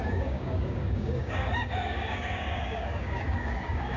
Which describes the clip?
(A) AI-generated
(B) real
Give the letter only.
A